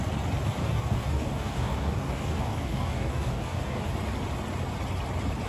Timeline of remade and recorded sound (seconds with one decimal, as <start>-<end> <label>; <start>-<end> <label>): 0.0-0.6 recorded; 0.6-3.9 remade; 3.9-5.5 recorded